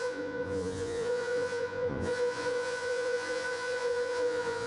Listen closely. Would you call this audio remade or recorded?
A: remade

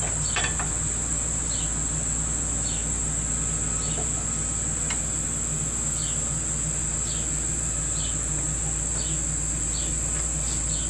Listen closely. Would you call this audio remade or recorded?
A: recorded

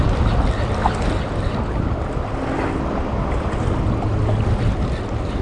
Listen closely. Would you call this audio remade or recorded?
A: recorded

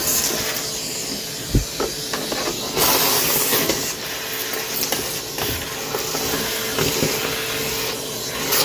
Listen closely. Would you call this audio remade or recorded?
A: recorded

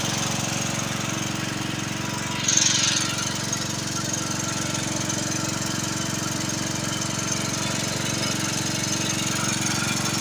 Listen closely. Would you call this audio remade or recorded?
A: recorded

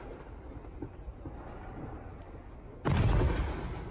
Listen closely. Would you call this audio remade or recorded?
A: recorded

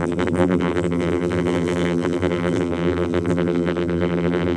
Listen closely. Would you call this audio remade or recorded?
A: remade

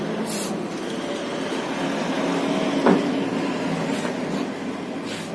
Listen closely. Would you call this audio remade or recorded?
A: recorded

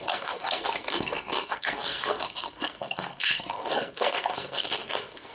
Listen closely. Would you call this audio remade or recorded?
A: remade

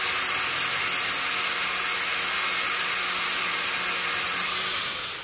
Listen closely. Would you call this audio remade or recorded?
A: recorded